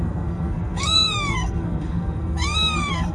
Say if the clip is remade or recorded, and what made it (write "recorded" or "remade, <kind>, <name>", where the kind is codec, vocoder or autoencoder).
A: remade, codec, SNAC